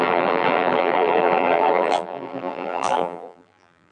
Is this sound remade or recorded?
remade